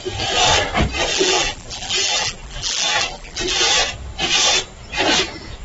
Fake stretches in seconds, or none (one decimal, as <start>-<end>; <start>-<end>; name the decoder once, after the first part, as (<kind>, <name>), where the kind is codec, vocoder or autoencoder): 1.1-3.6 (vocoder, BigVGAN v2)

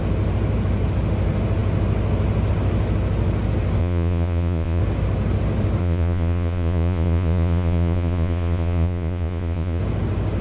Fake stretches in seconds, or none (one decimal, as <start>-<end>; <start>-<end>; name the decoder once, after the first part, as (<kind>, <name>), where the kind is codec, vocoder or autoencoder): 3.8-4.8 (vocoder, Vocos); 5.8-9.8

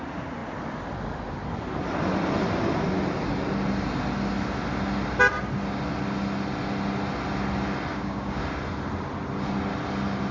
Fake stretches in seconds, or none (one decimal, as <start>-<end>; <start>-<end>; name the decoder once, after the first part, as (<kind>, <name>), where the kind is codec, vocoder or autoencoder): 7.9-8.4 (codec, DAC)

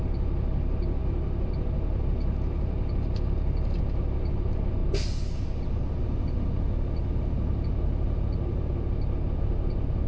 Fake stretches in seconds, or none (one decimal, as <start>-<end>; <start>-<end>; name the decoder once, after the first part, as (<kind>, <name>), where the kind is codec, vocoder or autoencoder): none